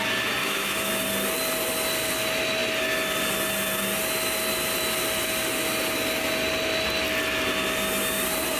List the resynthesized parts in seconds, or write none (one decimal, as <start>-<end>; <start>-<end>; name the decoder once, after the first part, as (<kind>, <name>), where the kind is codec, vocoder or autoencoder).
0.4-0.9 (autoencoder, DAC-VAE)